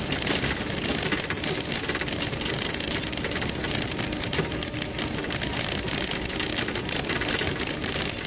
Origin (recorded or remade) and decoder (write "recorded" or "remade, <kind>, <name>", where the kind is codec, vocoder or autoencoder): recorded